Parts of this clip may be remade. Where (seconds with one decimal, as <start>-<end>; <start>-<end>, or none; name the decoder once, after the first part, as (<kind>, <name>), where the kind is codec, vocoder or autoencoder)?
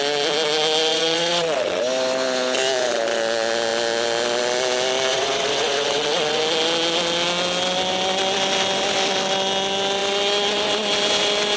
0.9-1.8 (vocoder, WaveNeXt); 5.1-6.4